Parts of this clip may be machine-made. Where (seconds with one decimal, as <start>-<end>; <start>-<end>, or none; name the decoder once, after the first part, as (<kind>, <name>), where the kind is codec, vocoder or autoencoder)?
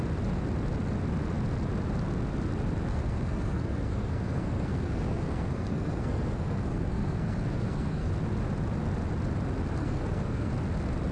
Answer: 2.9-8.1 (codec, SNAC); 9.8-10.5